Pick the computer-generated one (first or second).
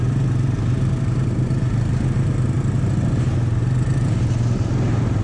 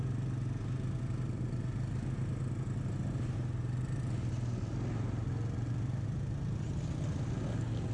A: first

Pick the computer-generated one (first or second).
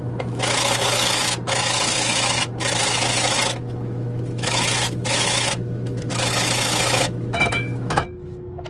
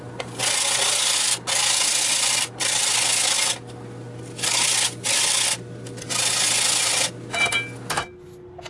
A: first